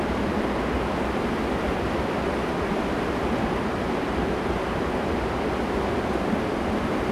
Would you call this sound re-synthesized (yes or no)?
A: no